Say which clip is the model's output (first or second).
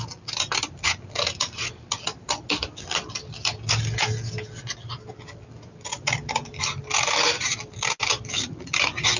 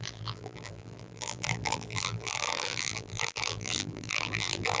second